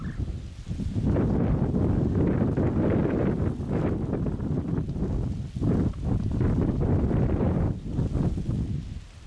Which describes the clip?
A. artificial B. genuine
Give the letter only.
B